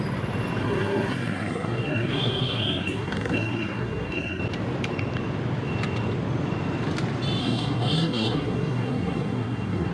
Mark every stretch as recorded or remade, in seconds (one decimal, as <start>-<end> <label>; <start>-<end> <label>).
0.0-0.6 recorded; 0.6-4.4 remade; 4.4-7.4 recorded; 7.4-9.9 remade